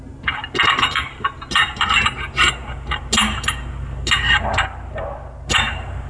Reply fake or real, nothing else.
real